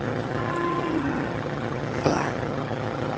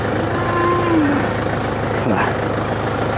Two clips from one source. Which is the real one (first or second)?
second